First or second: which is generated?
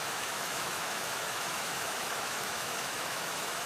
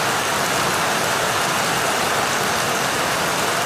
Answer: first